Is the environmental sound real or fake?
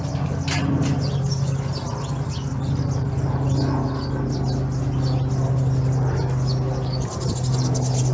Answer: real